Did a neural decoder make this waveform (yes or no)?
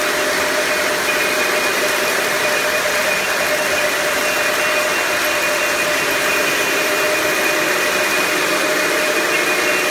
no